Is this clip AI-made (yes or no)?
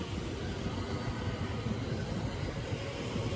no